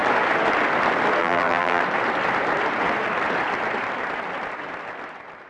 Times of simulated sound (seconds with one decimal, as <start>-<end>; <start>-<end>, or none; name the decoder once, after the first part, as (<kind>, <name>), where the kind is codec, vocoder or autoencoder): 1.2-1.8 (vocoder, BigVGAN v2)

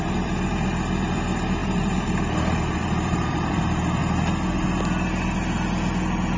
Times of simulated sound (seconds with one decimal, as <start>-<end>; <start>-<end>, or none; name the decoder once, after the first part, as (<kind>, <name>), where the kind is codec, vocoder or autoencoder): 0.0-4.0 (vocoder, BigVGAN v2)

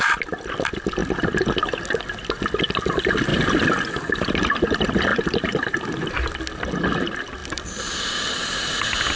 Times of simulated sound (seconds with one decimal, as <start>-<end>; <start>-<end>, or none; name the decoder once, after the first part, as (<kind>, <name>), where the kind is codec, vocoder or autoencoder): 3.3-4.6 (vocoder, BigVGAN v2); 5.1-6.4; 7.4-8.0

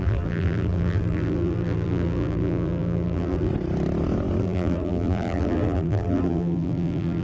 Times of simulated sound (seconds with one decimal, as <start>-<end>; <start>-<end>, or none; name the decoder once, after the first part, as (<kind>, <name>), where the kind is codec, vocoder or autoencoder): 0.0-3.5 (vocoder, BigVGAN v2); 4.4-7.2

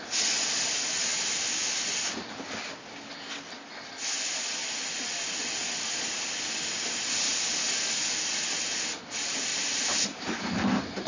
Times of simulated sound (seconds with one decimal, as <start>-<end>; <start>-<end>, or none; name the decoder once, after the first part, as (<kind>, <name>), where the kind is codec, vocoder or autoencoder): 9.5-11.1 (vocoder, BigVGAN v2)